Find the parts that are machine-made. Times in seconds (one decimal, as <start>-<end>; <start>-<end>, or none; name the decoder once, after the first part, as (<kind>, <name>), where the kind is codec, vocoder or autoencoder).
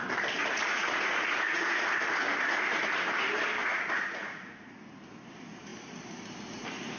0.4-1.8 (vocoder, Vocos); 3.6-4.7